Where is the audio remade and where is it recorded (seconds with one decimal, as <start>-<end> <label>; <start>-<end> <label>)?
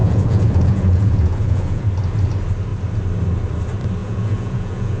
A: 0.0-1.9 remade; 1.9-4.0 recorded; 4.0-5.0 remade